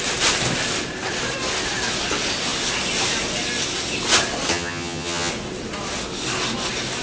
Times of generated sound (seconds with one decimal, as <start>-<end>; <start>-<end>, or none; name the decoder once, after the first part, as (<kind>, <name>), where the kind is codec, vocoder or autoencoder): 4.5-5.3 (vocoder, HiFi-GAN)